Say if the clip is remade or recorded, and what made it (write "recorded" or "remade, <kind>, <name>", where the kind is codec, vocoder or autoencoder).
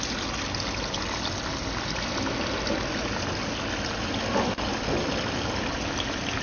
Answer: recorded